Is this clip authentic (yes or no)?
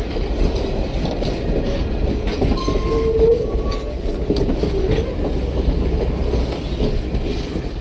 yes